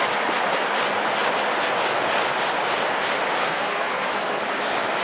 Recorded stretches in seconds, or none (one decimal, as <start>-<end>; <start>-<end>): 0.0-3.4; 4.4-5.0